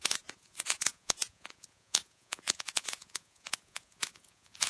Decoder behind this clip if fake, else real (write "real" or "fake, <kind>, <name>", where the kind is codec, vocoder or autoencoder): fake, vocoder, Vocos